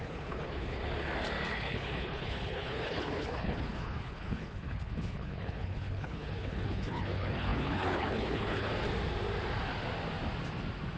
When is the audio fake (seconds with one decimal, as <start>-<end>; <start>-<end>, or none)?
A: 0.0-0.8; 1.5-8.7